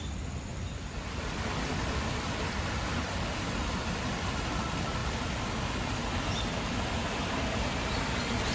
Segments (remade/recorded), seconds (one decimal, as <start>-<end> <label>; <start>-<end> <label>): 0.0-0.5 recorded; 0.5-4.3 remade; 4.3-5.0 recorded; 5.0-5.6 remade; 5.6-8.5 recorded